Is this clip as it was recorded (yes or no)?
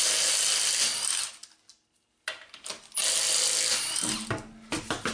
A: yes